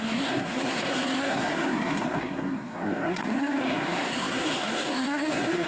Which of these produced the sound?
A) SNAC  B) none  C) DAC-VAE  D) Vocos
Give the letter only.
A